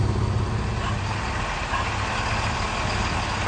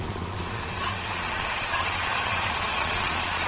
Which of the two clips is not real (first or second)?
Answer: second